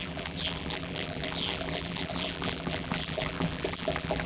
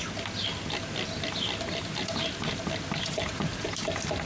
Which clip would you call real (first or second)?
second